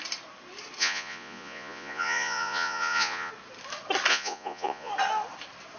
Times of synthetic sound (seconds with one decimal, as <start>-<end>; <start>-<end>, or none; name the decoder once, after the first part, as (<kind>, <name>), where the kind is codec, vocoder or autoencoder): 0.8-3.3 (vocoder, Vocos); 4.1-4.9